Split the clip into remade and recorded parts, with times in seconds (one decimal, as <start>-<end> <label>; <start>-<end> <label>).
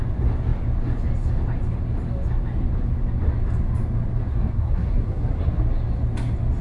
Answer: 0.0-4.3 recorded; 4.3-5.6 remade; 5.6-6.6 recorded